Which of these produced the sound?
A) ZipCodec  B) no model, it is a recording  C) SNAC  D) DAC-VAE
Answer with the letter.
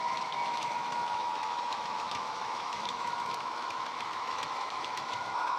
D